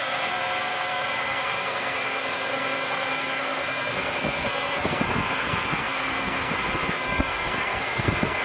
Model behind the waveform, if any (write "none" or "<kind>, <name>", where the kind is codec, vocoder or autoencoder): codec, SNAC